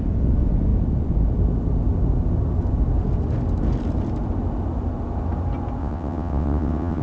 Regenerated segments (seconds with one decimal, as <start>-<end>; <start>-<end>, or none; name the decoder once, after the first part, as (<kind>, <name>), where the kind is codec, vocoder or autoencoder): 5.8-7.0 (vocoder, WaveNeXt)